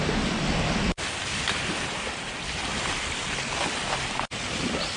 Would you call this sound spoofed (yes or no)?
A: no